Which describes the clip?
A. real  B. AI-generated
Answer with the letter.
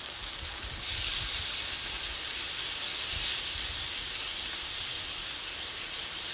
A